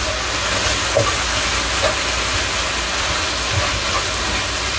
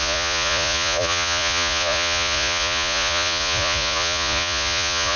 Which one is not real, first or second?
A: second